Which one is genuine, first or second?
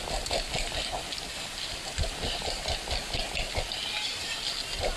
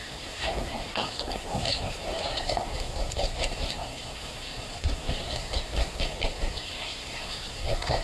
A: first